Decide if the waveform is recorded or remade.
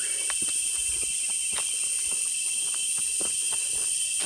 recorded